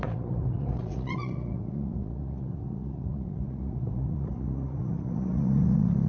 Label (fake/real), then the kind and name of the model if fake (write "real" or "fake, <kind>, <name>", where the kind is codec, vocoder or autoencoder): fake, vocoder, Vocos